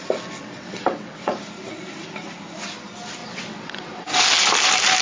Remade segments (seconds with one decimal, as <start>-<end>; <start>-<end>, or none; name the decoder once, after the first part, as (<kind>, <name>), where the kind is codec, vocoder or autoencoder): 0.4-1.3 (vocoder, WaveNeXt); 3.2-4.2

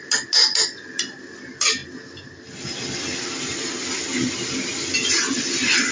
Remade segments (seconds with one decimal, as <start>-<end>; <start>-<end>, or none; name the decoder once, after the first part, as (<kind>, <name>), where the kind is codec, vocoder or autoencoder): none

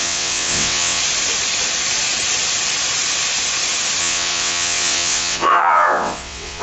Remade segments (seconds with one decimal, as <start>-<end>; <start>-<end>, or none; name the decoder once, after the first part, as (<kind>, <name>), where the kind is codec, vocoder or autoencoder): 0.0-1.0 (vocoder, WaveNeXt); 4.0-6.6

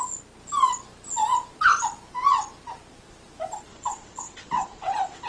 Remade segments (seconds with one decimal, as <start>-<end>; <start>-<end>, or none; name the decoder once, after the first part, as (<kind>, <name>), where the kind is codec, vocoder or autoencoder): 3.7-5.3 (vocoder, WaveNeXt)

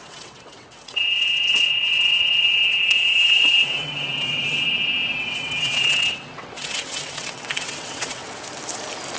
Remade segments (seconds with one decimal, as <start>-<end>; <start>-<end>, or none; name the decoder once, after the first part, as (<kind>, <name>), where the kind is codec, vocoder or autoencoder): 0.0-8.2 (vocoder, WaveNeXt)

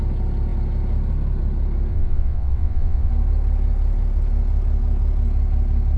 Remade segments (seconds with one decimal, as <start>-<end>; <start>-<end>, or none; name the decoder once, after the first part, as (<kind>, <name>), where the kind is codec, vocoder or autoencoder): 1.9-3.1 (vocoder, WaveNeXt)